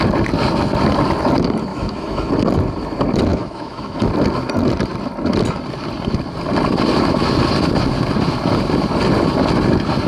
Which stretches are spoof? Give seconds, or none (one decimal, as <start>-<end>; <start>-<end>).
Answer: 1.7-2.3; 3.3-4.0